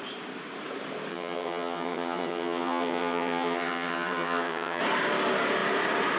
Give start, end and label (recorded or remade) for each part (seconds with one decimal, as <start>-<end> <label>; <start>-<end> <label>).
0.0-1.1 recorded; 1.1-4.8 remade; 4.8-6.2 recorded